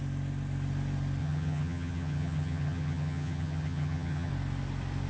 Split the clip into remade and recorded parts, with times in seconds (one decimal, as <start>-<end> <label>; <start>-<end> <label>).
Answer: 0.0-1.2 recorded; 1.2-4.3 remade; 4.3-5.1 recorded